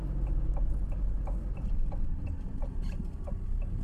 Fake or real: real